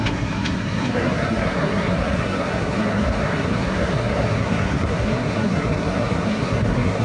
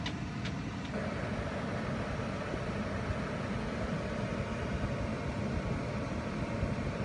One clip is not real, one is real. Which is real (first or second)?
second